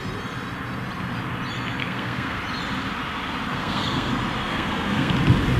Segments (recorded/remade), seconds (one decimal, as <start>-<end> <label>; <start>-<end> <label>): 0.0-1.8 recorded; 1.8-2.4 remade; 2.4-3.5 recorded; 3.5-4.1 remade; 4.1-4.5 recorded; 4.5-5.1 remade; 5.1-5.6 recorded